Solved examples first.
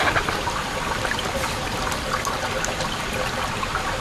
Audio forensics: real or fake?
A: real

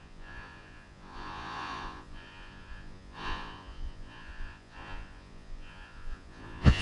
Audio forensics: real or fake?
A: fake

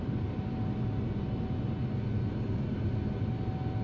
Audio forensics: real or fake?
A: real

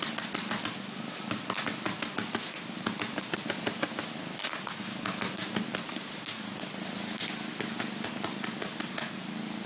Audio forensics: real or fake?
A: real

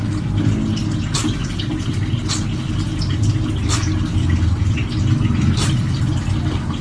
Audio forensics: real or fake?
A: real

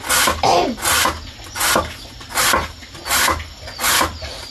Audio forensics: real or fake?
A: real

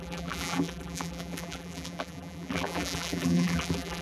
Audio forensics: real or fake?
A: fake